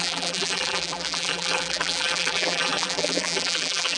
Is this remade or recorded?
remade